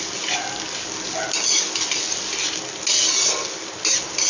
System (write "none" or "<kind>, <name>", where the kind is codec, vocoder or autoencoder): none